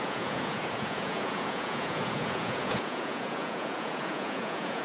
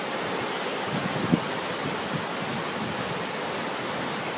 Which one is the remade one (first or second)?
first